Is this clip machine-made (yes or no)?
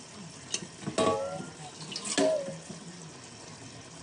no